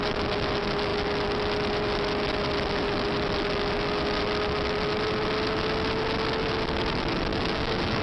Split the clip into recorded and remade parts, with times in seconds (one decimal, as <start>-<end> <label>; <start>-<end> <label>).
0.0-7.3 recorded; 7.3-8.0 remade